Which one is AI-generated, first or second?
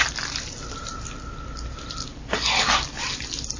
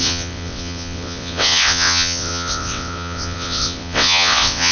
second